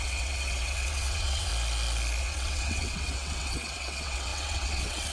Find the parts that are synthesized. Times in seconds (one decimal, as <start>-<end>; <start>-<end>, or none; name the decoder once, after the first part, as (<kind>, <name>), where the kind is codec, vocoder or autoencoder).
0.0-1.5 (vocoder, WaveNeXt); 2.2-5.1